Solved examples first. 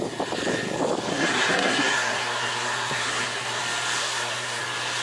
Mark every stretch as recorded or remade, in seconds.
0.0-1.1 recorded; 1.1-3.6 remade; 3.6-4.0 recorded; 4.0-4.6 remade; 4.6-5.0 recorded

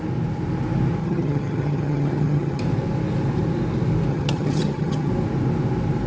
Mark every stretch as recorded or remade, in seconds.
0.0-1.0 recorded; 1.0-2.6 remade; 2.6-4.1 recorded; 4.1-5.1 remade; 5.1-6.1 recorded

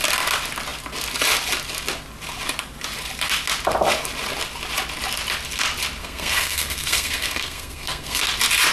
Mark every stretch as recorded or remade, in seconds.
0.0-6.0 recorded; 6.0-8.2 remade; 8.2-8.7 recorded

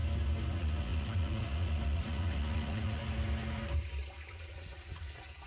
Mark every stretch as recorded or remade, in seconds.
0.0-0.5 recorded; 0.5-3.0 remade; 3.0-4.3 recorded; 4.3-5.5 remade